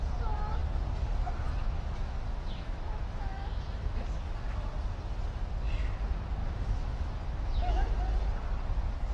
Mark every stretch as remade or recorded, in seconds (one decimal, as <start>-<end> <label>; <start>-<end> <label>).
0.0-1.6 recorded; 1.6-4.2 remade; 4.2-6.4 recorded; 6.4-8.0 remade; 8.0-9.1 recorded